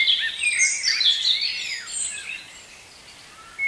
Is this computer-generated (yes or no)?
no